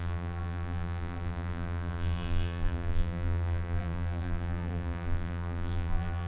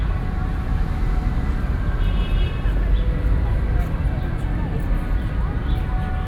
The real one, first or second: second